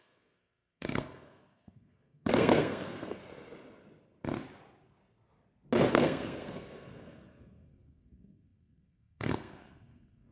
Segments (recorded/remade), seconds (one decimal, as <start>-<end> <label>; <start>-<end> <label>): 0.0-3.2 remade; 3.2-5.9 recorded; 5.9-10.3 remade